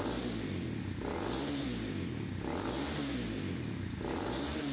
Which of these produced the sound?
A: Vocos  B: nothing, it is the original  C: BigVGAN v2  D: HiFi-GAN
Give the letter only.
B